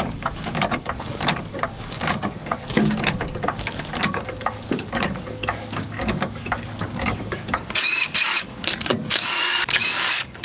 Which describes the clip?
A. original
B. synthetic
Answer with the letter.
B